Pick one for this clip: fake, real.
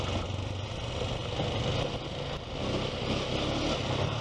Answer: real